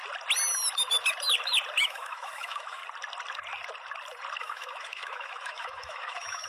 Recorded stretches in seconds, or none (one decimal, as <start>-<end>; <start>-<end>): 0.0-1.8; 2.8-4.4